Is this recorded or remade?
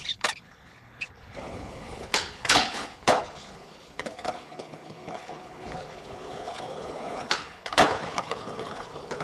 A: remade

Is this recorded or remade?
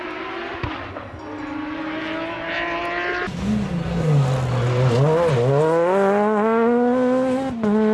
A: recorded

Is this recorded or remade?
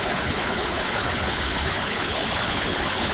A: remade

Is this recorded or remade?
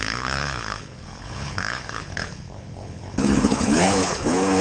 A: remade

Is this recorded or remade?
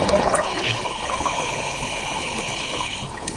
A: remade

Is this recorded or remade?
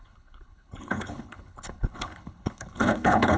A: remade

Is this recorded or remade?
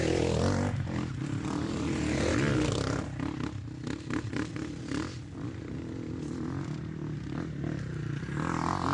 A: recorded